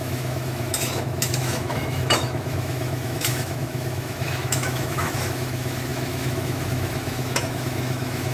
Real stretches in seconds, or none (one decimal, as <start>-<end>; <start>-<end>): none